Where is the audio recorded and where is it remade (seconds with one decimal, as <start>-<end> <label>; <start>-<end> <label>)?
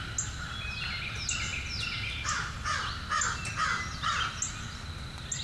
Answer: 0.0-5.4 recorded